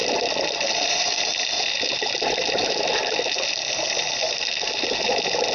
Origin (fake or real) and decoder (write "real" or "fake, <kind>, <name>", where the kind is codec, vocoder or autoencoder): real